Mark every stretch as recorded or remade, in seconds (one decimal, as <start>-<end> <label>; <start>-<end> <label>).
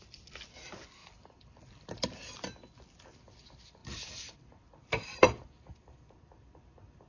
0.0-1.0 recorded; 1.0-2.1 remade; 2.1-3.8 recorded; 3.8-7.1 remade